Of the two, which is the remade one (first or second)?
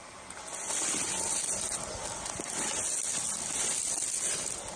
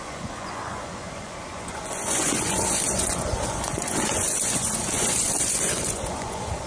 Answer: second